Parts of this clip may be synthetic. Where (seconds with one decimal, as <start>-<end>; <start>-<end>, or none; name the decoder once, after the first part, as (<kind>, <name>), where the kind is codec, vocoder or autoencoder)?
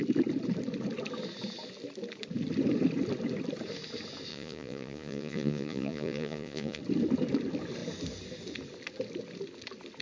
4.3-6.8 (vocoder, Vocos)